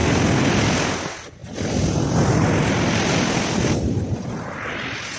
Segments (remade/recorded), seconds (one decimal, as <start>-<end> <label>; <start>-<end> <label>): 0.0-5.2 recorded